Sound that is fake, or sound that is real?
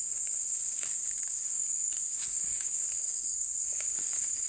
fake